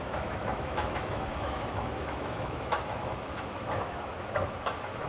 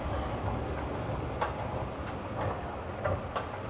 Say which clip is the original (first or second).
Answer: second